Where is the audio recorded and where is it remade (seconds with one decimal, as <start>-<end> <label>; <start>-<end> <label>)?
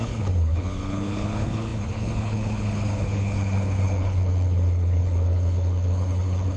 0.0-6.6 remade